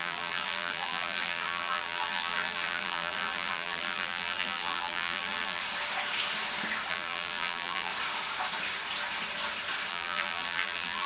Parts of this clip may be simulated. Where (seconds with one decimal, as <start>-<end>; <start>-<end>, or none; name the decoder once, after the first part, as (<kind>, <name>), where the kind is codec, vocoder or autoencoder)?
0.0-5.6 (vocoder, BigVGAN v2); 6.9-7.9; 9.9-11.1